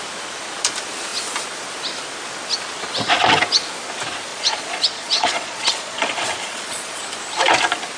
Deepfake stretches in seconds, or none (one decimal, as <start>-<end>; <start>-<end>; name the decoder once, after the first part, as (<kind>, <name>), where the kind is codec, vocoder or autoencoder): 4.3-7.0 (vocoder, Vocos)